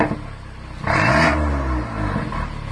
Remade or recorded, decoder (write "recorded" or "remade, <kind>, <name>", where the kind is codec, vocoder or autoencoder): recorded